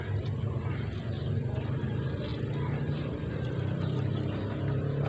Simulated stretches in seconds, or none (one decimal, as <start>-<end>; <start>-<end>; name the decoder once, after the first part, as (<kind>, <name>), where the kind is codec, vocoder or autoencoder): 0.0-5.1 (vocoder, BigVGAN v2)